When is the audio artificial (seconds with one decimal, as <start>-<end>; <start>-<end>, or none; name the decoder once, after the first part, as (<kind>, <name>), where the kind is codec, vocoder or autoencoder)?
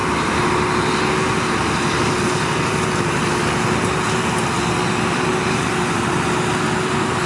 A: none